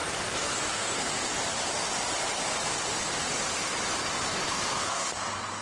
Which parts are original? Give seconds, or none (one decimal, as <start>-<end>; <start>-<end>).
0.0-0.7; 1.1-4.5